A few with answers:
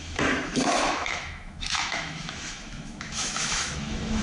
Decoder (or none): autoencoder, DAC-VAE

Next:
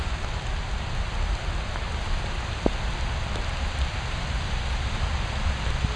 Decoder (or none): none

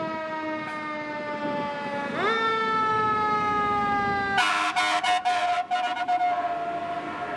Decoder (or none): none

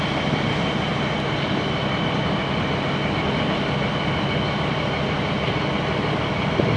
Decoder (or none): none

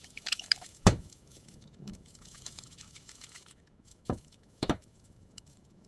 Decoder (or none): autoencoder, DAC-VAE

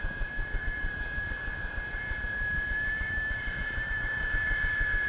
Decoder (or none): autoencoder, DAC-VAE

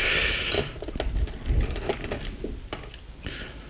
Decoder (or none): none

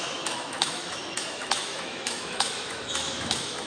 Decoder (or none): autoencoder, DAC-VAE